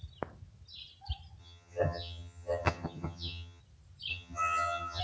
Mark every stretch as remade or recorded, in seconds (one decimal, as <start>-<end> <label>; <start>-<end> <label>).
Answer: 0.0-1.4 recorded; 1.4-3.6 remade; 3.6-4.1 recorded; 4.1-5.0 remade